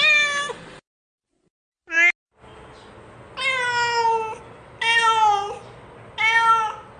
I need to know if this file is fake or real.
real